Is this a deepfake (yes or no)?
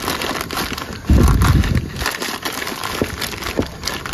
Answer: no